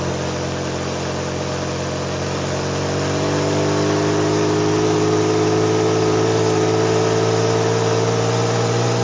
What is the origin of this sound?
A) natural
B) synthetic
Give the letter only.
A